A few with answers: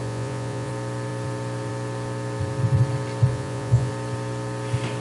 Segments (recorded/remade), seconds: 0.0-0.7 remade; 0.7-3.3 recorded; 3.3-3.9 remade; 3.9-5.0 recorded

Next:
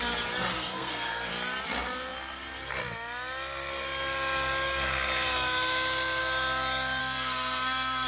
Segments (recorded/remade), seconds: 0.0-0.5 recorded; 0.5-1.3 remade; 1.3-7.0 recorded; 7.0-8.1 remade

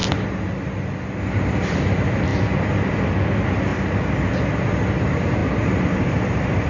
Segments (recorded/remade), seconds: 0.0-1.5 recorded; 1.5-2.3 remade; 2.3-2.9 recorded; 2.9-3.7 remade; 3.7-4.6 recorded; 4.6-5.4 remade; 5.4-6.0 recorded; 6.0-6.7 remade